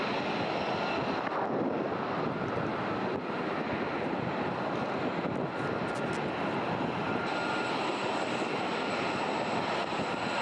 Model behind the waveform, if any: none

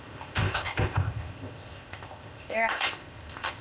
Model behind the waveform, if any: codec, ZipCodec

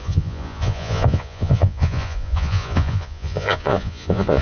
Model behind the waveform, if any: vocoder, Vocos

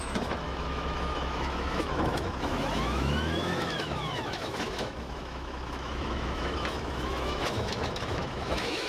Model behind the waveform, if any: autoencoder, DAC-VAE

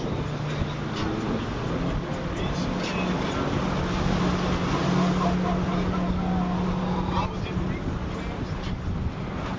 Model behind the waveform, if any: none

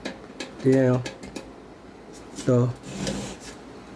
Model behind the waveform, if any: none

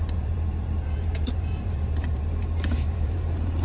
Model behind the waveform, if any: vocoder, BigVGAN v2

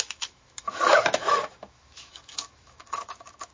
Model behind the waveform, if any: autoencoder, DAC-VAE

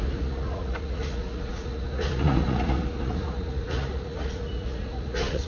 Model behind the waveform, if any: vocoder, Vocos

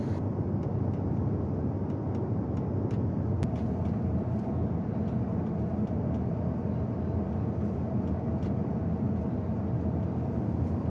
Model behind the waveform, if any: none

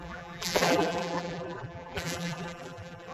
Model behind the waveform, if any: vocoder, BigVGAN v2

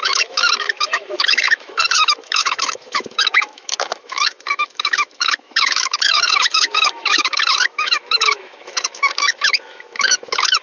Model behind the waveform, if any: autoencoder, DAC-VAE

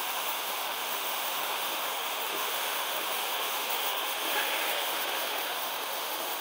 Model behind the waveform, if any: autoencoder, DAC-VAE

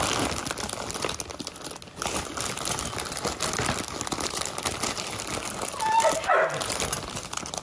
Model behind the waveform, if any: none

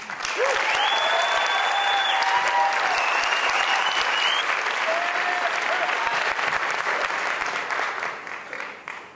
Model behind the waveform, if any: none